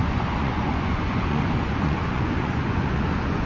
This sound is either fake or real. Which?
fake